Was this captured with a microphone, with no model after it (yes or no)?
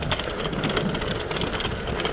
yes